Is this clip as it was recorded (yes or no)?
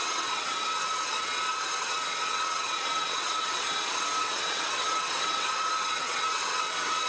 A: no